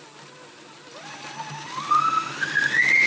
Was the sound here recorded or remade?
recorded